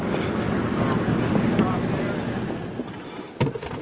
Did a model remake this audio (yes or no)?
no